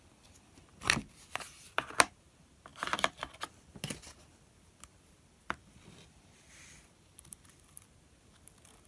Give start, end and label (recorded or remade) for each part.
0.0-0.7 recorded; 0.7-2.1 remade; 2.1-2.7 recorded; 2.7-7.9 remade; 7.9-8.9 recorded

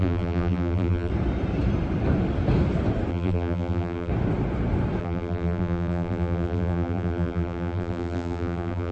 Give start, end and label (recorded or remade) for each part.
0.0-1.1 remade; 1.1-3.1 recorded; 3.1-4.1 remade; 4.1-5.0 recorded; 5.0-8.9 remade

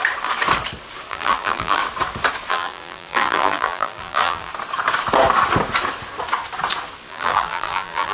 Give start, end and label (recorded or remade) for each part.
0.0-1.1 recorded; 1.1-1.8 remade; 1.8-2.5 recorded; 2.5-4.5 remade; 4.5-7.1 recorded; 7.1-8.1 remade

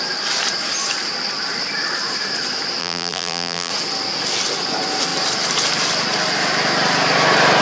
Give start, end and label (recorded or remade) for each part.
0.0-2.8 recorded; 2.8-3.7 remade; 3.7-7.6 recorded

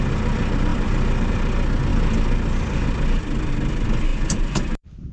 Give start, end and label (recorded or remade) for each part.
0.0-0.7 recorded; 0.7-1.3 remade; 1.3-4.1 recorded; 4.1-5.1 remade

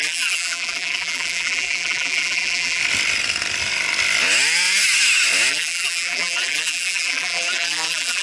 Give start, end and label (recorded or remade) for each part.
0.0-2.8 remade; 2.8-5.5 recorded; 5.5-8.2 remade

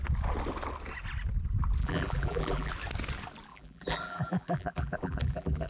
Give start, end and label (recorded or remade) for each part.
0.0-1.8 recorded; 1.8-2.7 remade; 2.7-3.5 recorded; 3.5-5.7 remade

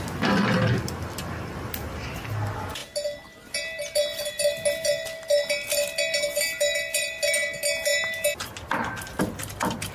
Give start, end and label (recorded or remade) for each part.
0.0-9.9 recorded